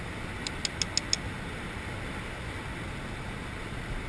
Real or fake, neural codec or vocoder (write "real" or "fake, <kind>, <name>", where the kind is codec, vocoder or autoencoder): real